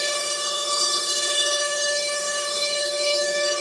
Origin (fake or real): fake